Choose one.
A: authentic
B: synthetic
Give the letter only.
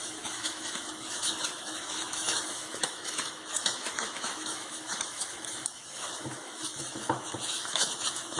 B